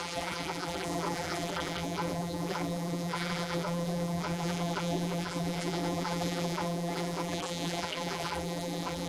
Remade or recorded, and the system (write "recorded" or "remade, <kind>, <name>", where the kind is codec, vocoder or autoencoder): remade, vocoder, BigVGAN v2